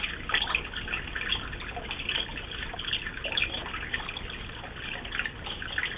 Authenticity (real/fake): real